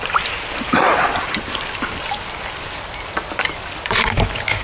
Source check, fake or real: real